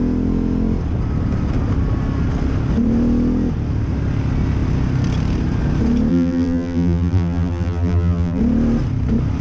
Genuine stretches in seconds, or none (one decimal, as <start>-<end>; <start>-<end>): 0.0-6.1; 8.4-9.4